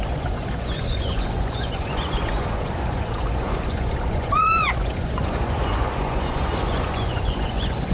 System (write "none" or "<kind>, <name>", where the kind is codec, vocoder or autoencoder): vocoder, Vocos